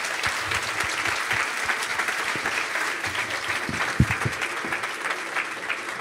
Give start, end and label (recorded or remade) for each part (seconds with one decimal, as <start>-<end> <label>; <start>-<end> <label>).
0.0-1.9 recorded; 1.9-4.4 remade; 4.4-6.0 recorded